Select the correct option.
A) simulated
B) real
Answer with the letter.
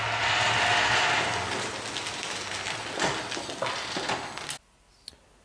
B